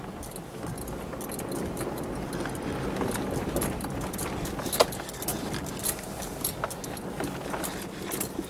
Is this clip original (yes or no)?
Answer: yes